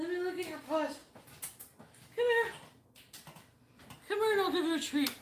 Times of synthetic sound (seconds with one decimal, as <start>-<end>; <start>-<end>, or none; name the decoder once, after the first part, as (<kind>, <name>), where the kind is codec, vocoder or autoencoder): none